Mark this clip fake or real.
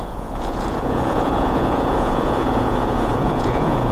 fake